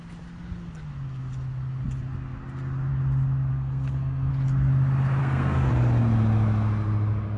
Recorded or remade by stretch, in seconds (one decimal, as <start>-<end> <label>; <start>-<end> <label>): 0.0-3.5 recorded; 3.5-4.3 remade; 4.3-5.2 recorded; 5.2-5.7 remade; 5.7-7.4 recorded